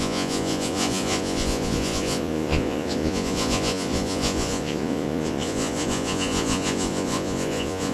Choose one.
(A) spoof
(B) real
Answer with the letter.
A